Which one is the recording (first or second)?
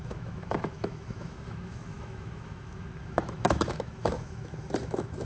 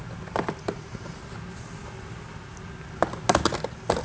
second